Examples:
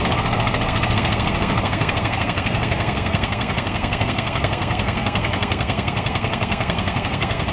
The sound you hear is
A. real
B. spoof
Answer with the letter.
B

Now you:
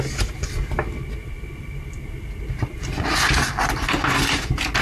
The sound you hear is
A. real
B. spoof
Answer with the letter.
A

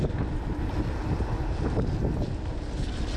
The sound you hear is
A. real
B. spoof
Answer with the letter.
A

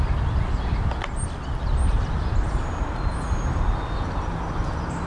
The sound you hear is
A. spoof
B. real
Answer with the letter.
B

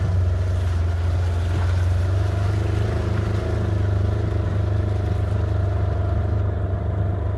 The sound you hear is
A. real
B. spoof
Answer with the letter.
A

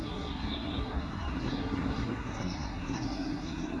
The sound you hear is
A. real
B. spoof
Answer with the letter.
B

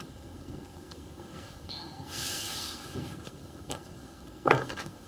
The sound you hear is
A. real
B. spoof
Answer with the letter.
B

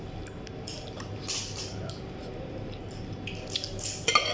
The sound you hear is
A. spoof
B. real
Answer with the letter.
B